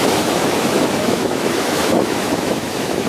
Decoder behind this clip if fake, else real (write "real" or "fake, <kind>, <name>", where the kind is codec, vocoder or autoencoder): fake, autoencoder, DAC-VAE